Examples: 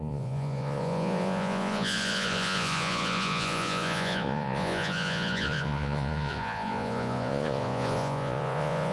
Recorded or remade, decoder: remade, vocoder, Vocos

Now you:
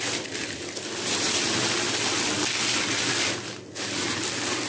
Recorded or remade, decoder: recorded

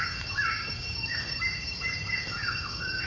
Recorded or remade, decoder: remade, codec, DAC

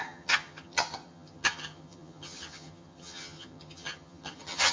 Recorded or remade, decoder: remade, vocoder, HiFi-GAN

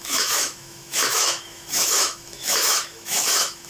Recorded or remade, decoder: remade, autoencoder, DAC-VAE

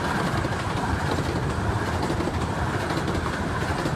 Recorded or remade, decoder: recorded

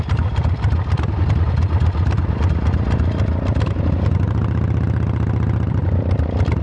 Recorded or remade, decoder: recorded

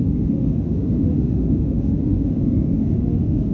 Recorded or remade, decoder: remade, autoencoder, DAC-VAE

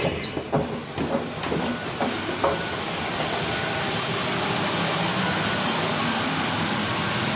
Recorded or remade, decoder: recorded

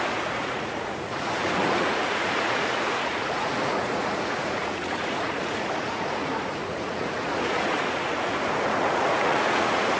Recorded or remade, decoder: remade, vocoder, Vocos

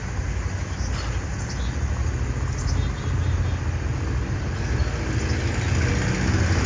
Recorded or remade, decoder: recorded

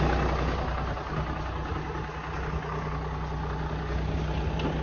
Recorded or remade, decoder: recorded